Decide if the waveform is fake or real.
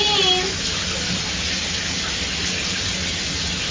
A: real